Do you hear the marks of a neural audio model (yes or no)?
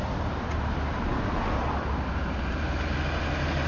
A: no